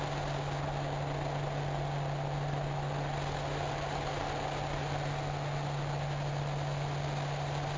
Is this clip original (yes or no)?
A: yes